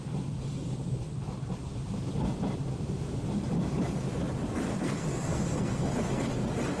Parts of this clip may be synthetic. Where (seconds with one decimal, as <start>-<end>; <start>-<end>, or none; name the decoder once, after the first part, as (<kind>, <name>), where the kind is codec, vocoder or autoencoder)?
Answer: 4.7-6.3 (codec, SNAC)